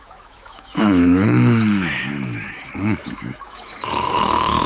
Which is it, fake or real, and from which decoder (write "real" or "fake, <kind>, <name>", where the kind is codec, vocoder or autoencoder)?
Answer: fake, autoencoder, DAC-VAE